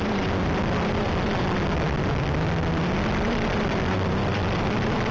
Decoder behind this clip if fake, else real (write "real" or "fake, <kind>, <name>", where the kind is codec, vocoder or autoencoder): real